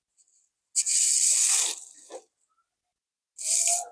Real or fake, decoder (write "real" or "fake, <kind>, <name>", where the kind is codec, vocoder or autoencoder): real